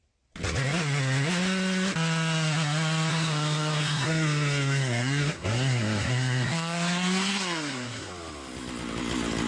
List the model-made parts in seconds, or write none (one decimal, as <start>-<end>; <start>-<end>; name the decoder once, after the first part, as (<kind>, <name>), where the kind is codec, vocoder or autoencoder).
3.1-8.1 (codec, SNAC)